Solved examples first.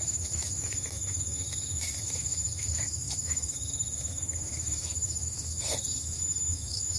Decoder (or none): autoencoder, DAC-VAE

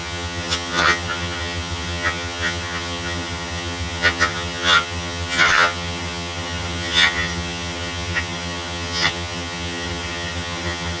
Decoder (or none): vocoder, HiFi-GAN